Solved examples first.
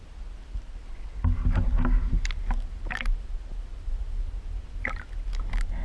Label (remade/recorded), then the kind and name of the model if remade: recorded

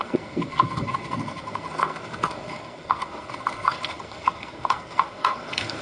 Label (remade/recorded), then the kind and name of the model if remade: remade, codec, SNAC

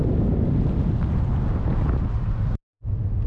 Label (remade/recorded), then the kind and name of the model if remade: recorded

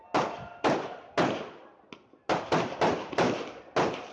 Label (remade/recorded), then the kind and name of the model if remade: recorded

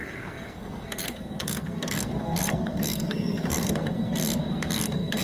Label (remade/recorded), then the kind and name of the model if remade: remade, codec, SNAC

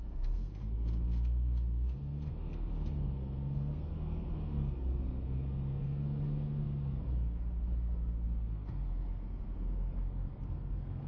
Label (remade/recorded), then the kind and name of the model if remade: remade, codec, SNAC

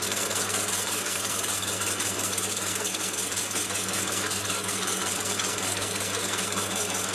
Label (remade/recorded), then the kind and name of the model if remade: remade, codec, SNAC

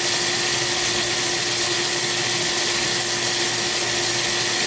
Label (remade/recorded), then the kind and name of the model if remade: recorded